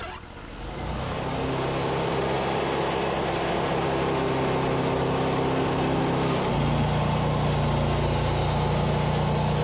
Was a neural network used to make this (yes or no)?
no